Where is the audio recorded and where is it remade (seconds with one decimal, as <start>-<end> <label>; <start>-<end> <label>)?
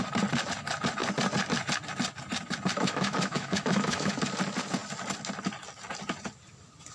0.0-2.7 recorded; 2.7-4.2 remade; 4.2-6.9 recorded